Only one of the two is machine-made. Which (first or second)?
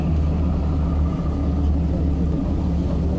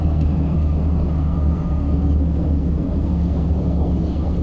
second